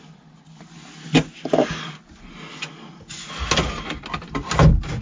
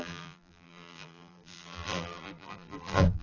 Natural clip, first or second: first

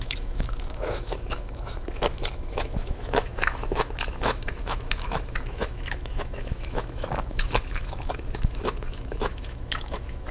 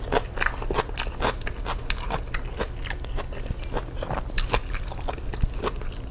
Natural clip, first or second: second